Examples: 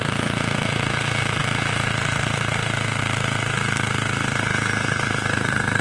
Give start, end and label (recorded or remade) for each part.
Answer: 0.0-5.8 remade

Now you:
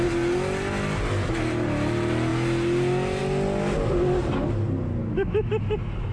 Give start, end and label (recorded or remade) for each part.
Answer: 0.0-5.0 recorded; 5.0-5.5 remade; 5.5-6.1 recorded

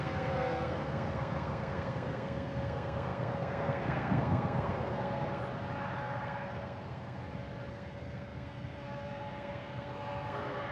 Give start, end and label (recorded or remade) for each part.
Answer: 0.0-5.4 remade; 5.4-6.0 recorded; 6.0-7.2 remade; 7.2-7.7 recorded; 7.7-10.7 remade

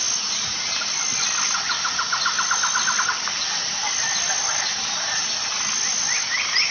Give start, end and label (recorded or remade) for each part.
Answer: 0.0-6.7 recorded

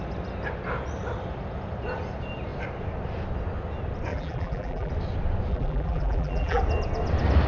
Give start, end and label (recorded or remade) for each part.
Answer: 0.0-4.1 recorded; 4.1-4.9 remade; 4.9-5.5 recorded; 5.5-6.6 remade; 6.6-7.5 recorded

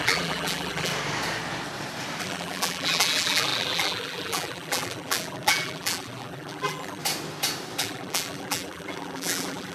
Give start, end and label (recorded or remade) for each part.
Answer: 0.0-0.9 remade; 0.9-2.2 recorded; 2.2-7.0 remade; 7.0-7.8 recorded; 7.8-9.7 remade

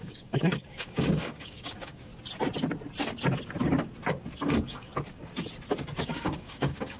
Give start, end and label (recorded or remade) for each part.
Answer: 0.0-2.1 remade; 2.1-4.5 recorded; 4.5-4.9 remade; 4.9-6.0 recorded; 6.0-7.0 remade